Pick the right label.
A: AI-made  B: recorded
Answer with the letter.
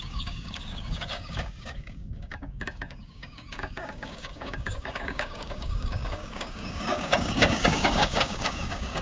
A